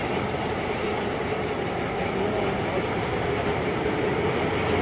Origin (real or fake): real